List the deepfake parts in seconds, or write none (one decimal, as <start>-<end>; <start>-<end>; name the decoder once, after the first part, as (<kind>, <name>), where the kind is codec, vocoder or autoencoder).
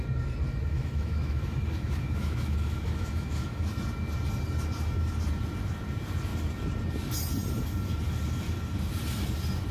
0.7-3.7 (autoencoder, DAC-VAE)